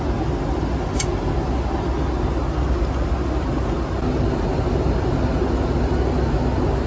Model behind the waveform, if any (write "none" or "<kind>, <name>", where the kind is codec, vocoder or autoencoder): none